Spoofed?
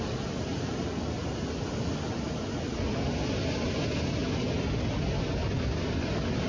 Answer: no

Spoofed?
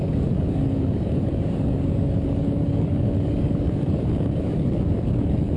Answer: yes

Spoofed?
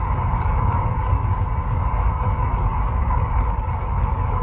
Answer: yes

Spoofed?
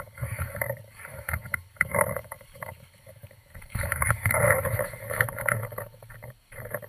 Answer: yes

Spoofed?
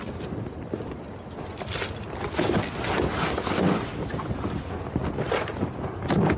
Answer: no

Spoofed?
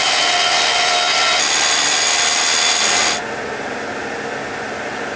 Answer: no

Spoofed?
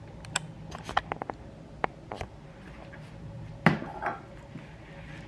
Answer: no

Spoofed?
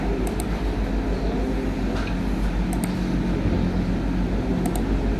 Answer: no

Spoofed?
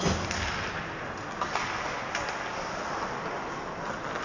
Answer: no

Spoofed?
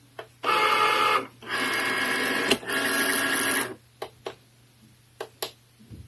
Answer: no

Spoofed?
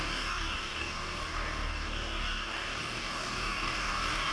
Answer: yes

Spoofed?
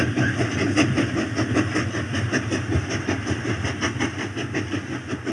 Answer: no